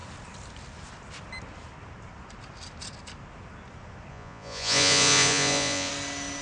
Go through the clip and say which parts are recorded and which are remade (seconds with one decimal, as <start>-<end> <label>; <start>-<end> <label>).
0.0-4.1 recorded; 4.1-5.9 remade; 5.9-6.4 recorded